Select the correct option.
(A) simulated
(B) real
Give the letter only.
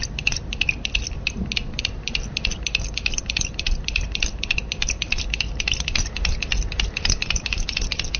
B